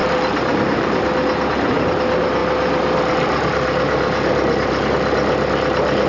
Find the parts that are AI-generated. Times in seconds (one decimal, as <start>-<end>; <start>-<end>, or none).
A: 0.0-1.0